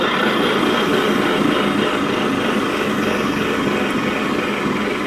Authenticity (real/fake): real